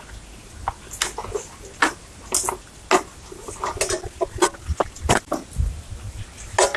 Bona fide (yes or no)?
yes